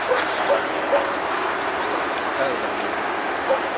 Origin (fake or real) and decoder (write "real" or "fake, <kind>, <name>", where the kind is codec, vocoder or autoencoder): real